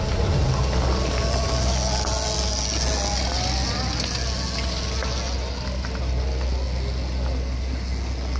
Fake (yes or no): no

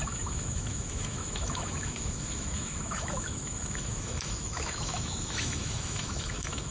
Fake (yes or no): yes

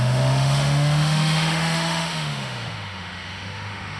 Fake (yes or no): yes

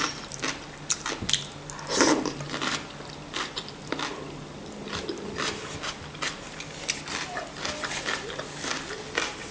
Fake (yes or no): no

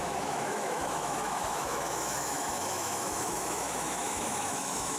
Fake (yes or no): yes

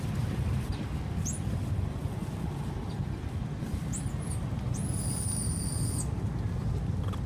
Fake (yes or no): no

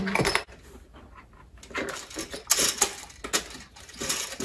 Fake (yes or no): no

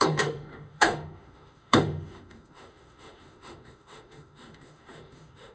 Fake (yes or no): yes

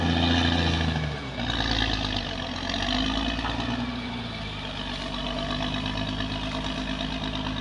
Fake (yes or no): no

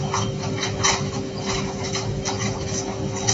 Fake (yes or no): yes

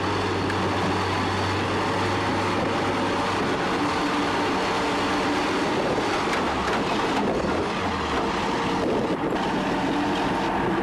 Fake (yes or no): no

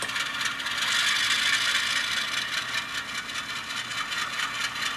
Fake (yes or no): no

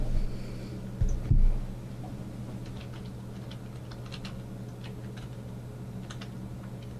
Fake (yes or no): no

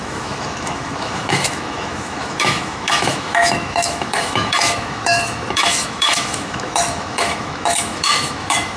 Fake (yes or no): yes